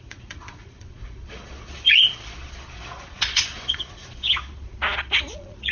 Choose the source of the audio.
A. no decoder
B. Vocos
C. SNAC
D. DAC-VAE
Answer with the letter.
B